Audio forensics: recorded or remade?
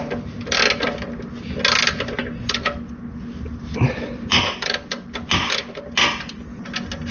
recorded